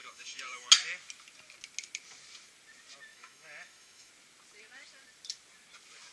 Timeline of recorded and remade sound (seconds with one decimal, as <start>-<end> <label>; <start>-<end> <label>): 0.0-0.7 remade; 0.7-3.1 recorded; 3.1-4.1 remade; 4.1-6.1 recorded

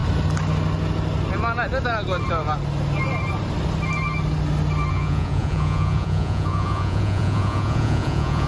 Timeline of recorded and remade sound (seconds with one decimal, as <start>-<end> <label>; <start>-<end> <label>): 0.0-4.9 recorded; 4.9-8.5 remade

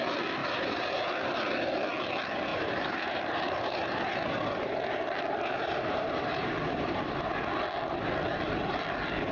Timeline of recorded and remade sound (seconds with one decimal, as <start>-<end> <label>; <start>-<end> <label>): 0.0-0.4 recorded; 0.4-1.1 remade; 1.1-2.5 recorded; 2.5-7.3 remade; 7.3-9.3 recorded

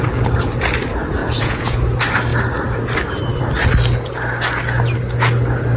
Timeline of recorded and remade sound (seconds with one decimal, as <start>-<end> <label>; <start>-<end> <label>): 0.0-1.2 recorded; 1.2-1.8 remade; 1.8-5.8 recorded

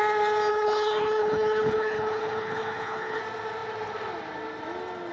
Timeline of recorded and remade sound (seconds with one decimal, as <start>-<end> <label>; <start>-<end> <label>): 0.0-0.5 recorded; 0.5-3.2 remade; 3.2-5.1 recorded

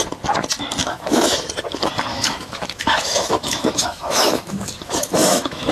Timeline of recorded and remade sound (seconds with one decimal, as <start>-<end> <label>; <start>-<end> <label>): 0.0-0.8 recorded; 0.8-1.5 remade; 1.5-2.1 recorded; 2.1-5.7 remade